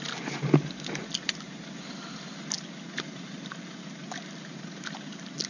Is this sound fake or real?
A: real